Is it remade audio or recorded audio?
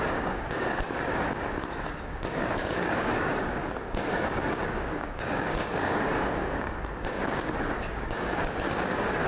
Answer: remade